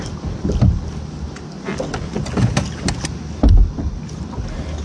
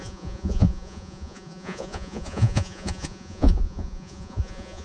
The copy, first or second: second